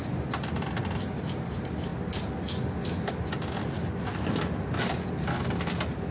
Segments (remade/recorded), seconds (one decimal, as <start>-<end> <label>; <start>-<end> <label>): 0.0-6.1 recorded